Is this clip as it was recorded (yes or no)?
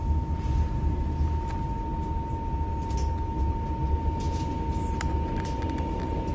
yes